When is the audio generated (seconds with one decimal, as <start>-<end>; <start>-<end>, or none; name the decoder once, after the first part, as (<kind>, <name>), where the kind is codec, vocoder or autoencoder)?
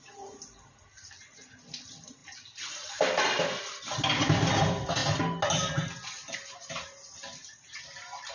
none